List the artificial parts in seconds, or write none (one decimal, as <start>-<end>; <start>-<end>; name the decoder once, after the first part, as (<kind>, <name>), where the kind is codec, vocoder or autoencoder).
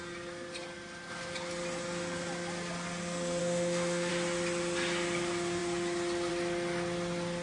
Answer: 3.4-4.1 (autoencoder, DAC-VAE)